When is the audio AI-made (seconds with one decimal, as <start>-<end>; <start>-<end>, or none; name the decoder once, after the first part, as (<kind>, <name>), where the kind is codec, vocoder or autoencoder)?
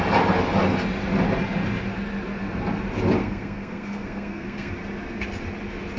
3.2-4.7 (codec, SNAC)